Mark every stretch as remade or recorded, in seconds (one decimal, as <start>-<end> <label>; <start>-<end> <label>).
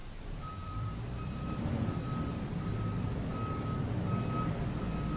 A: 0.0-3.1 remade; 3.1-5.2 recorded